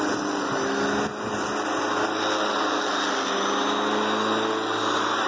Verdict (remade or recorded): recorded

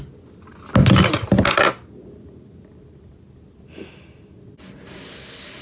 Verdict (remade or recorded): recorded